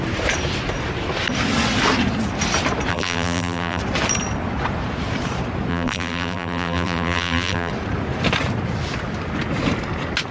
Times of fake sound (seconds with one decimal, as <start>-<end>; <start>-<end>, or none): 2.9-3.8; 5.7-7.7